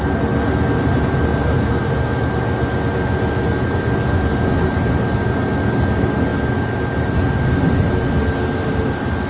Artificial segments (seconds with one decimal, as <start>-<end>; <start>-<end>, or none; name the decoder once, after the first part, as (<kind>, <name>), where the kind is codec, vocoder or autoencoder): 1.3-1.9 (vocoder, BigVGAN v2)